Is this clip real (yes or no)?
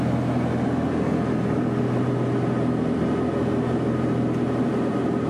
yes